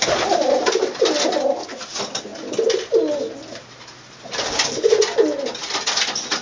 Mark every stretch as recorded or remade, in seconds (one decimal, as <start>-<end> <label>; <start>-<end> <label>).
0.0-6.4 recorded